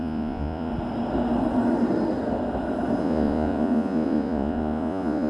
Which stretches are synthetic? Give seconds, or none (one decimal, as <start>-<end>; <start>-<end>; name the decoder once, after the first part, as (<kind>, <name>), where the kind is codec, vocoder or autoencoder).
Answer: 0.0-0.7 (vocoder, Vocos); 3.0-5.3